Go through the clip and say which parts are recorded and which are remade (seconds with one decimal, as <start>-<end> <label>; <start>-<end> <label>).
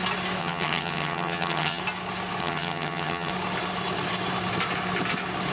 0.0-0.4 recorded; 0.4-1.8 remade; 1.8-2.4 recorded; 2.4-3.3 remade; 3.3-5.5 recorded